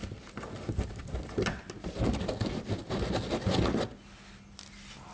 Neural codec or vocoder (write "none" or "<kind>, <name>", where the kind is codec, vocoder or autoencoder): none